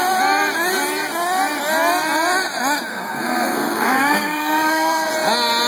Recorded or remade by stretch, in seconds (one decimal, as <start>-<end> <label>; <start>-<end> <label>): 0.0-2.9 recorded; 2.9-5.1 remade; 5.1-5.7 recorded